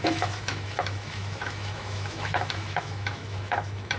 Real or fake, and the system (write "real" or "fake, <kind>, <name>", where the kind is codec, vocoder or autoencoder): fake, autoencoder, DAC-VAE